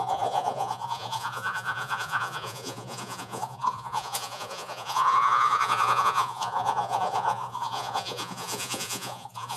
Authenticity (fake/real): fake